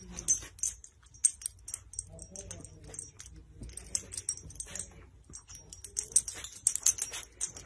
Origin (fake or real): real